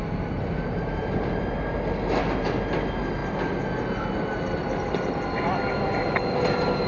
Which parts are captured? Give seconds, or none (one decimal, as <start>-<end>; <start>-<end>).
0.0-6.9